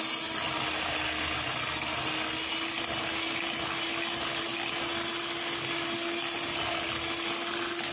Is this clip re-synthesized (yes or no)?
no